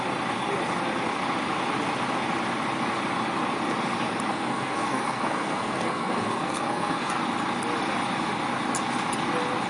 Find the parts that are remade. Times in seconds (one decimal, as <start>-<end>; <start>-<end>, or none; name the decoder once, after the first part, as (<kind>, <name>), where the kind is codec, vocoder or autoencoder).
4.3-7.1 (codec, SNAC)